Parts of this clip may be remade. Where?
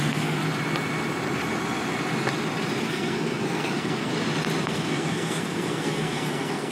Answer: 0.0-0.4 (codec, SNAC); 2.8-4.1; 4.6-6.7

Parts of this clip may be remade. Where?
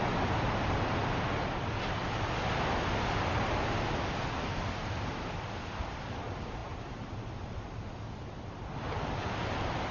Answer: none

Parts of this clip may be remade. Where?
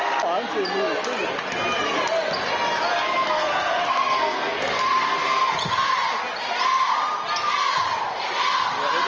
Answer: 2.9-5.5 (codec, SNAC)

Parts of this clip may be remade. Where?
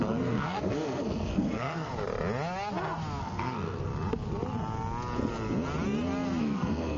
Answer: 0.0-1.9 (codec, SNAC); 3.2-3.9; 6.4-7.0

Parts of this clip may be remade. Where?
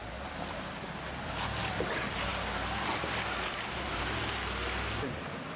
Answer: none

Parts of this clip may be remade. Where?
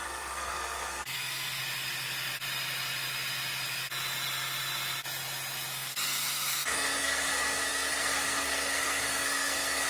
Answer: 0.0-1.6 (codec, SNAC); 5.7-9.9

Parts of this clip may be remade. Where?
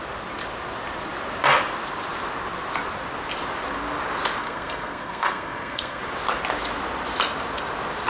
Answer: 4.4-6.0 (codec, SNAC)